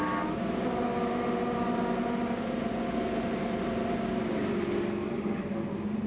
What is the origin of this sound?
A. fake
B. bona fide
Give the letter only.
B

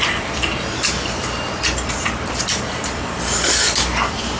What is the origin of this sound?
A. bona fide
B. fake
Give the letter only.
B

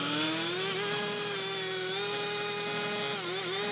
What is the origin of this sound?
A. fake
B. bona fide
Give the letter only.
B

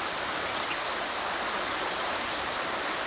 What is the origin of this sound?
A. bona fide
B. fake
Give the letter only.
A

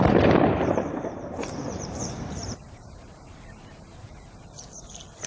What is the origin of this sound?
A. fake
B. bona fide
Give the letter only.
A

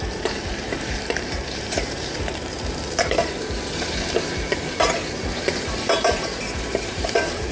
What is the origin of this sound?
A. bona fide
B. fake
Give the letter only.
B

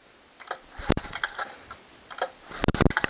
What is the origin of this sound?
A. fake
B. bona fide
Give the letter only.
B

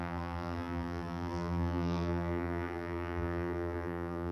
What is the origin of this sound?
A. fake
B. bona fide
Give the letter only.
A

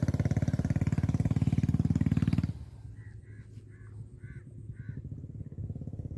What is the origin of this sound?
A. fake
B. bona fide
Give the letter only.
B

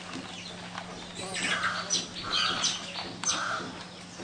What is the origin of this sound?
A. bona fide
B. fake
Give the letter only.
A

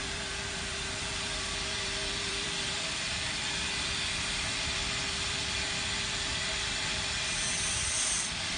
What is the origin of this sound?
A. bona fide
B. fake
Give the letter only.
B